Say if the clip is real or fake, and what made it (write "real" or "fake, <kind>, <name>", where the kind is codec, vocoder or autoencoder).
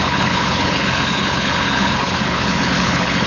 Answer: fake, codec, HILCodec